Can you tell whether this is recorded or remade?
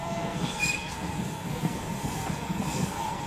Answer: remade